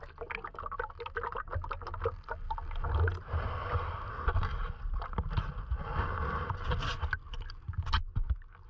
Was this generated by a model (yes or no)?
no